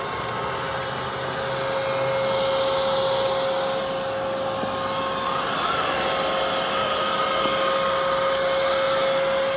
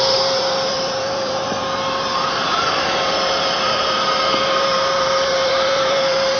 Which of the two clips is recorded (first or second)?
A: first